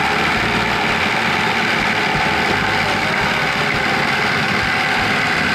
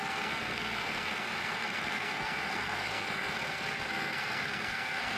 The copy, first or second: second